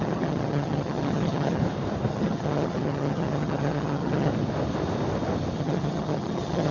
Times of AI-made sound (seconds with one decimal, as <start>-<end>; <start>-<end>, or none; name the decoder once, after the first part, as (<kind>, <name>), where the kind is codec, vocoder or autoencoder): 0.0-1.6 (vocoder, HiFi-GAN); 2.1-4.3; 5.6-6.7

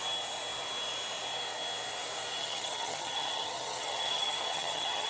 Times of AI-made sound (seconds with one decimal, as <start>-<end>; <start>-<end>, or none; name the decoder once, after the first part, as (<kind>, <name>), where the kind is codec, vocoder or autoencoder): 2.4-5.1 (vocoder, HiFi-GAN)

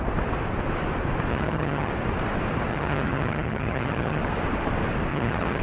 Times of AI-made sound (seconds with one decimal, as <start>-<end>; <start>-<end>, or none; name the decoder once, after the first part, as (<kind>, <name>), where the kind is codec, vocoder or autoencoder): 1.3-1.9 (vocoder, HiFi-GAN); 2.7-4.2; 5.1-5.6

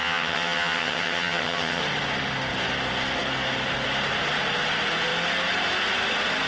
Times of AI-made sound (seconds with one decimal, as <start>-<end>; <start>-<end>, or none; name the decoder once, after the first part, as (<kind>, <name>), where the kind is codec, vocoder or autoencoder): 0.0-1.8 (vocoder, HiFi-GAN)

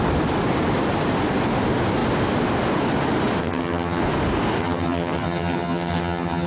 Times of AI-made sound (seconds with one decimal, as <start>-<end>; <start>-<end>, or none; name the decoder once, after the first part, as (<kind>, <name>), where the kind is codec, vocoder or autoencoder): 3.4-4.0 (vocoder, HiFi-GAN); 4.6-6.5